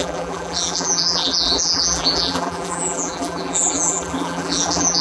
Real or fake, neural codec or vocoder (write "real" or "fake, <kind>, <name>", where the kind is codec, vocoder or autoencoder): fake, vocoder, BigVGAN v2